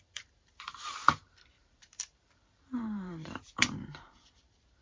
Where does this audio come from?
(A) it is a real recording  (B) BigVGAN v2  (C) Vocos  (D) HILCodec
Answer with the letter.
B